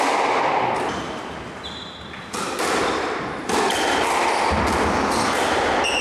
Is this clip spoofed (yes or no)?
no